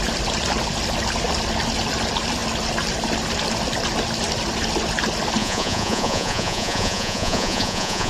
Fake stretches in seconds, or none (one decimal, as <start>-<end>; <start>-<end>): 5.4-8.1